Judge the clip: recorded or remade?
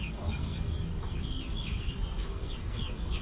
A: remade